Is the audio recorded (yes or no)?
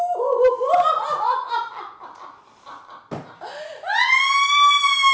yes